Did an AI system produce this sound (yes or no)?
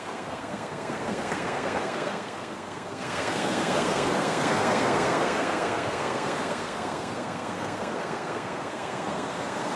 yes